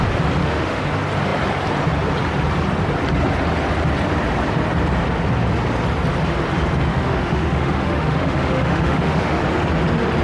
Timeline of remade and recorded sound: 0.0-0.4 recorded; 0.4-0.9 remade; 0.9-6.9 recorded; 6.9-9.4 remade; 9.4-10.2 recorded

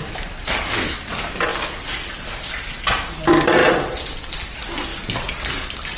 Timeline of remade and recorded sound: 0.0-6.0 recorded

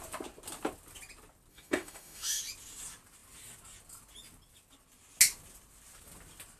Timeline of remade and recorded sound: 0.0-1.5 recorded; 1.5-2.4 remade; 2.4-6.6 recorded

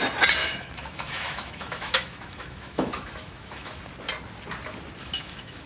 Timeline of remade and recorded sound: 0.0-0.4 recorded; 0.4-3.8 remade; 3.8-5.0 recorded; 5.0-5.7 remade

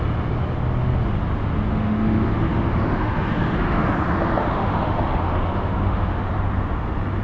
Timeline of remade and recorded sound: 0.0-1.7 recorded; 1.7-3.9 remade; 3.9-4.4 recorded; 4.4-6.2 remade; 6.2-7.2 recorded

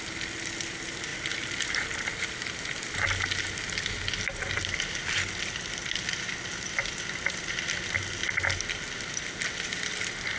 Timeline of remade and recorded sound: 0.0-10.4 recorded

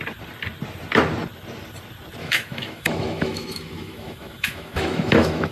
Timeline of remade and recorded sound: 0.0-2.2 recorded; 2.2-5.5 remade